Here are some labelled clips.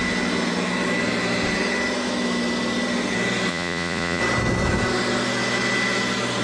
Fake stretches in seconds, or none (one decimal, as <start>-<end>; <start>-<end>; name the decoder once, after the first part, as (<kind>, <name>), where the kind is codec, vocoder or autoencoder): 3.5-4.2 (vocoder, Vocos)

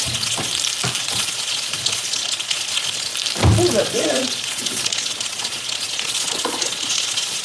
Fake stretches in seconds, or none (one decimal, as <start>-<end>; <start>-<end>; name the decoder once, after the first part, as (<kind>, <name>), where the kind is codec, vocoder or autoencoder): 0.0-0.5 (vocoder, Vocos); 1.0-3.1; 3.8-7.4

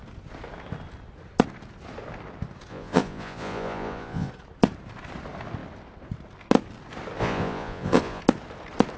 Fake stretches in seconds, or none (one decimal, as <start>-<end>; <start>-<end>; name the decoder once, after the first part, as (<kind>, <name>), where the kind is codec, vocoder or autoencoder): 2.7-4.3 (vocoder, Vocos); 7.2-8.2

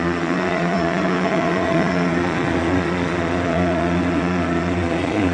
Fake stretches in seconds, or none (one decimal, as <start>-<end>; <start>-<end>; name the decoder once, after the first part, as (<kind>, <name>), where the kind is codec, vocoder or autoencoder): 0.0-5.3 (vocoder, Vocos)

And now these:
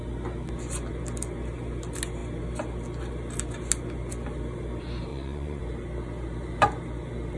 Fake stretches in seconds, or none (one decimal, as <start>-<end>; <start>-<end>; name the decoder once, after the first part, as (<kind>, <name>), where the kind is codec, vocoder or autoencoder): 5.1-5.6 (vocoder, Vocos)

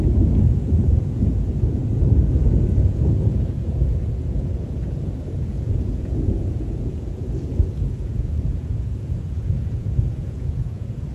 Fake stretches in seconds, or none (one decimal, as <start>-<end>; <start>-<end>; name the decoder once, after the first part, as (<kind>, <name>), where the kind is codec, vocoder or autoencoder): 0.0-1.8 (vocoder, Vocos); 2.3-11.1

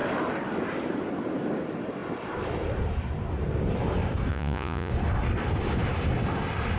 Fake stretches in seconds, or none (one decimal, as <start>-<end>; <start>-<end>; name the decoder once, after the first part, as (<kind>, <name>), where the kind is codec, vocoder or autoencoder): 4.3-4.9 (vocoder, Vocos)

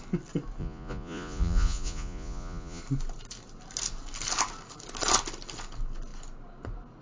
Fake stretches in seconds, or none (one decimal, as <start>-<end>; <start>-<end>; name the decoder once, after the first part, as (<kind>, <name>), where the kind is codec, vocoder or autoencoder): 0.6-2.8 (vocoder, Vocos)